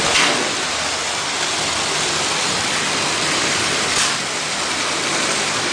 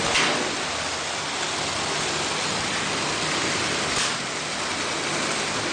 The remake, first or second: first